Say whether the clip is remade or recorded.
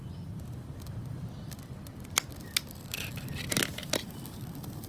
remade